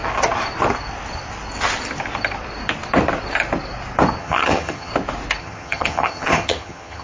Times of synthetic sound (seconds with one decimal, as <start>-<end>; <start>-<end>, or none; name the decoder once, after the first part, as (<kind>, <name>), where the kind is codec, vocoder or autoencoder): 4.2-4.9 (vocoder, HiFi-GAN); 5.4-7.0